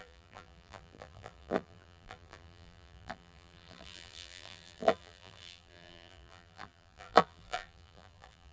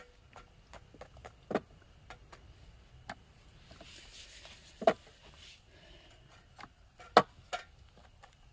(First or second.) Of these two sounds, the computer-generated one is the first